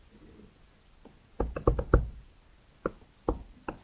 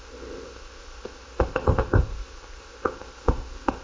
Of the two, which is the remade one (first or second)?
second